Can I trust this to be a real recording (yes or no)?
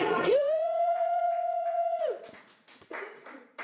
no